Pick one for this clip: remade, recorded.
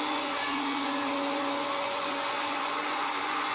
remade